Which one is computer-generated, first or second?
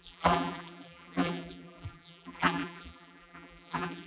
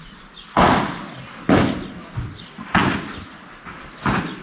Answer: first